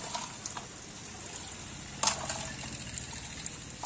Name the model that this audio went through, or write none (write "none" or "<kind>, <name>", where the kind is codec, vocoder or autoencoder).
none